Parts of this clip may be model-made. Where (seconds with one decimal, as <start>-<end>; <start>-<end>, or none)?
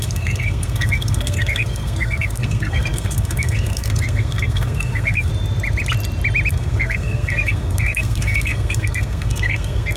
0.0-5.3; 6.5-10.0